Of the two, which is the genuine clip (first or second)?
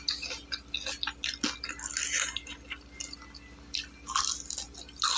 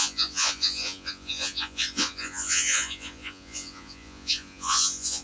first